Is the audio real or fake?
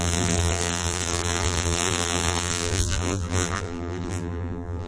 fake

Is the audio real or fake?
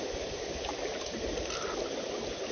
real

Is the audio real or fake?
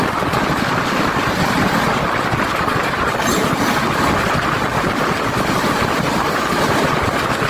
real